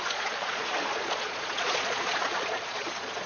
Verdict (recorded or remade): remade